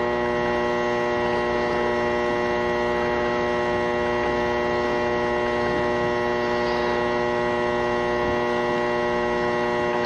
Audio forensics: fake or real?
real